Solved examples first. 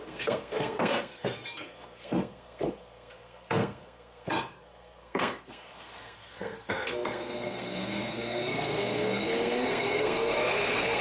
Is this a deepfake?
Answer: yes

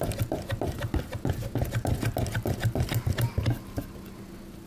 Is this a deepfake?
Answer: no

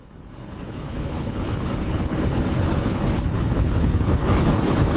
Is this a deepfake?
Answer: yes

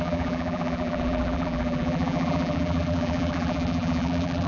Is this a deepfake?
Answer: yes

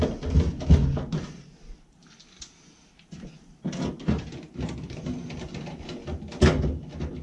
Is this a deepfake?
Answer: no